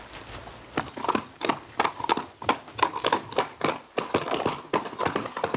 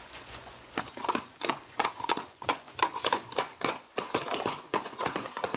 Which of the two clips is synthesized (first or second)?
second